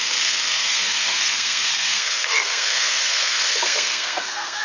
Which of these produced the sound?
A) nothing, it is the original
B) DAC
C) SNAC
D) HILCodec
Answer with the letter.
C